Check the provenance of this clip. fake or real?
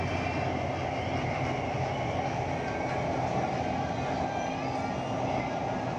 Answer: real